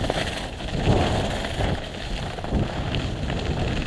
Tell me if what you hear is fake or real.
real